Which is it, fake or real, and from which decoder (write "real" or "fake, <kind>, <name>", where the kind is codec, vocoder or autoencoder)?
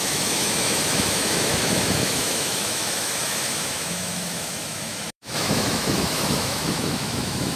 fake, autoencoder, DAC-VAE